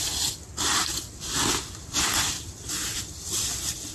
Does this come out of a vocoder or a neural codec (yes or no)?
no